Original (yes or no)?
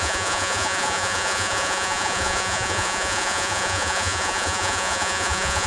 no